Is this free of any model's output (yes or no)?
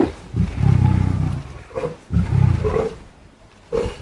yes